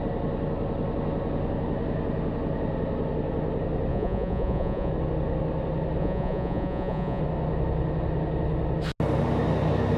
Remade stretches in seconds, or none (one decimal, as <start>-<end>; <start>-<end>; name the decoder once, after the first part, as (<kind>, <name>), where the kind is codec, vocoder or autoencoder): 3.9-4.9 (vocoder, Vocos); 6.0-7.2